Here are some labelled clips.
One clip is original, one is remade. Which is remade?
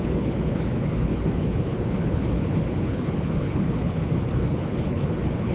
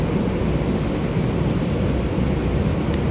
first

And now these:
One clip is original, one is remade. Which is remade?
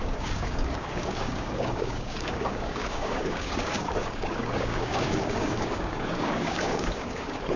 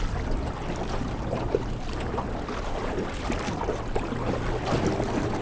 first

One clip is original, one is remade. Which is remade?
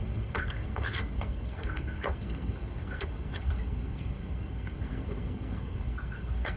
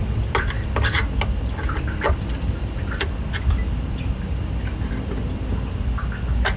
first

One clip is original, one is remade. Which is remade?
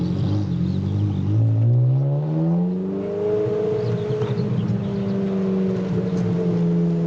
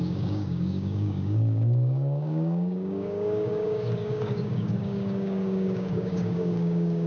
second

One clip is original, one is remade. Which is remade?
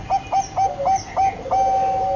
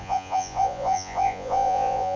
second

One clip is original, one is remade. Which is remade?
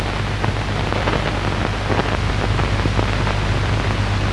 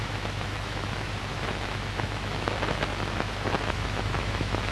second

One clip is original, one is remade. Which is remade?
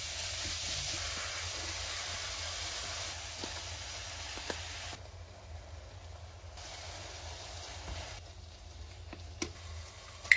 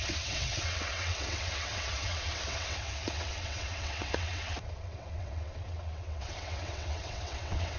second